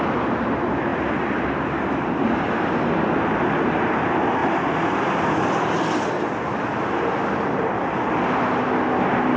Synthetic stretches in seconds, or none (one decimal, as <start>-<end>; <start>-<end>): 0.9-3.1; 4.4-6.1